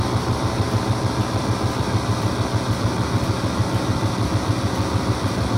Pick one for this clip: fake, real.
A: real